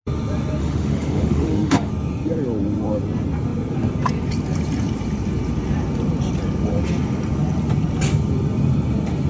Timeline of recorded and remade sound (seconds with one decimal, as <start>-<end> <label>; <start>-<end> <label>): 0.0-0.6 recorded; 0.6-1.9 remade; 1.9-9.3 recorded